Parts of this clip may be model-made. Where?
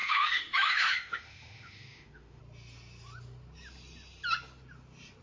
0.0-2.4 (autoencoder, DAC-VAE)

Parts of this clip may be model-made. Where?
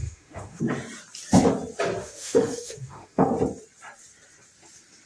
0.0-0.6 (autoencoder, DAC-VAE); 2.0-3.3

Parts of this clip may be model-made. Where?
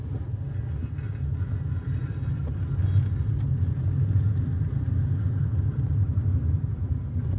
none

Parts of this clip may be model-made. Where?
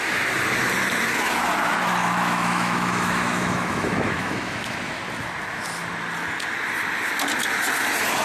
2.0-5.0 (autoencoder, DAC-VAE)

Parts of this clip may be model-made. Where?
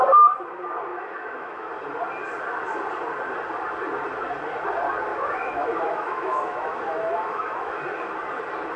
0.9-1.7 (autoencoder, DAC-VAE); 5.1-7.8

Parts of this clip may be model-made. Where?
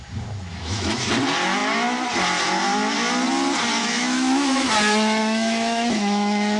0.5-1.1 (autoencoder, DAC-VAE); 3.8-4.7; 5.2-6.6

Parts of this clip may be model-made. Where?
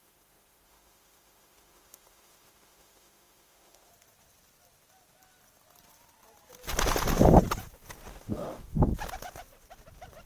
0.0-3.9 (autoencoder, DAC-VAE); 8.1-8.9